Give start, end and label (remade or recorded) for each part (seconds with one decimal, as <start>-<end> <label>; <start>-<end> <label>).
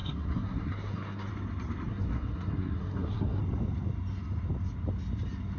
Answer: 0.0-1.3 remade; 1.3-1.9 recorded; 1.9-3.4 remade; 3.4-5.6 recorded